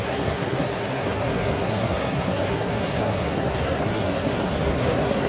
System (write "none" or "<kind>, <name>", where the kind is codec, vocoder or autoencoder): codec, SNAC